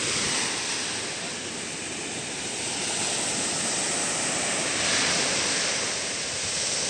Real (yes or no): yes